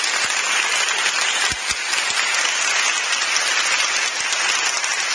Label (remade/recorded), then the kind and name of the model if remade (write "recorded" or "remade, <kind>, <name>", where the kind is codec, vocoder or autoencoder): recorded